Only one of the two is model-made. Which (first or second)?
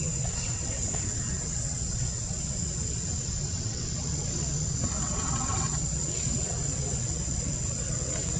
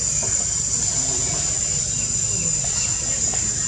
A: first